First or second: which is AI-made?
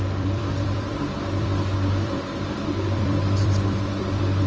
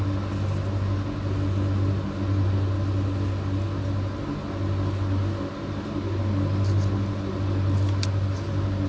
first